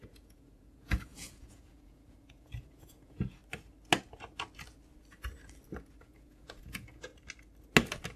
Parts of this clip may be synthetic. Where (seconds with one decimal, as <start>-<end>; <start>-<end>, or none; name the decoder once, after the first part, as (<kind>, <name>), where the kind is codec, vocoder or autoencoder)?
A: 0.0-3.4 (vocoder, Vocos); 6.0-7.1